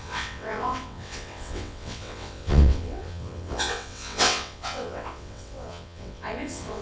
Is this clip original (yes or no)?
no